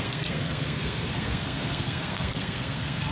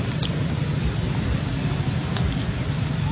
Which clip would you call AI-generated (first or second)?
first